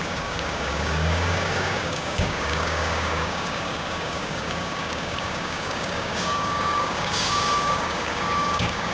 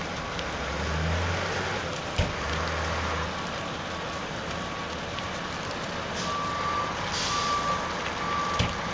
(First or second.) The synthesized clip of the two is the first